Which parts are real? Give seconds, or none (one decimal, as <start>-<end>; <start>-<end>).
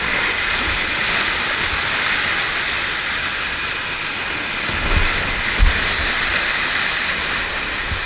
0.0-6.5; 7.0-8.1